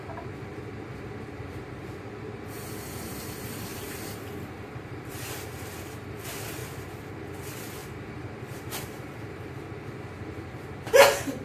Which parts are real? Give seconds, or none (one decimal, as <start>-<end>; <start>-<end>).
0.0-3.7; 5.8-7.8; 9.6-11.4